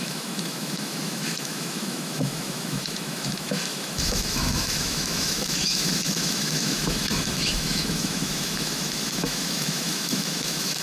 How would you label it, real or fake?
fake